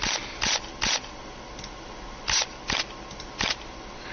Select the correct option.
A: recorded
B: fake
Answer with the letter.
A